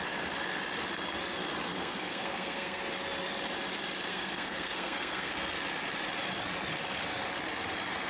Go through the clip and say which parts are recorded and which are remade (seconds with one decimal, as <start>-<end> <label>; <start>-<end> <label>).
0.0-1.7 recorded; 1.7-2.8 remade; 2.8-4.1 recorded; 4.1-5.3 remade; 5.3-8.1 recorded